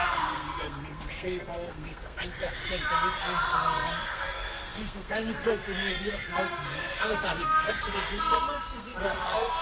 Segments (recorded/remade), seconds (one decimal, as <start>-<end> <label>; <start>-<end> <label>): 0.0-2.6 remade; 2.6-3.2 recorded; 3.2-9.6 remade